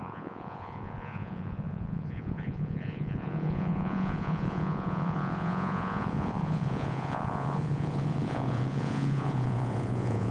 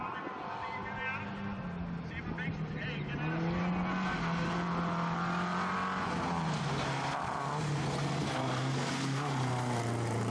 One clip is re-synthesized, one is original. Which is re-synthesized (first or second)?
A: first